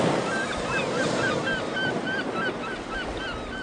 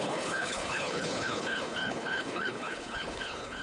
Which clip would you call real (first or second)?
first